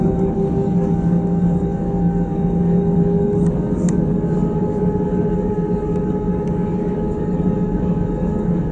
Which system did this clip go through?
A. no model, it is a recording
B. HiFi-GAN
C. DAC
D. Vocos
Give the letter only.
C